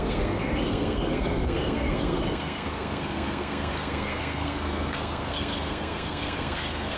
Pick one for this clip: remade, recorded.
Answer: remade